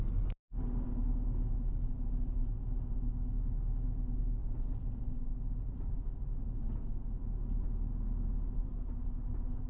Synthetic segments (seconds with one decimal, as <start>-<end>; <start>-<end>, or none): 4.4-7.2